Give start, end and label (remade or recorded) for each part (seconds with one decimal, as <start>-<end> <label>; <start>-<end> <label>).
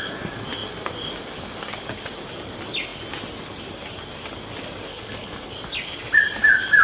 0.0-4.9 recorded; 4.9-5.5 remade; 5.5-6.8 recorded